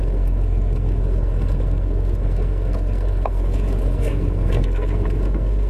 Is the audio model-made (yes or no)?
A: yes